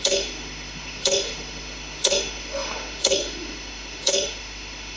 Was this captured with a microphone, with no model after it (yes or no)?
no